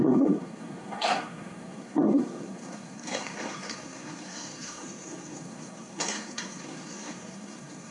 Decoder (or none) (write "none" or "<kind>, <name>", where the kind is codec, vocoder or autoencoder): codec, SNAC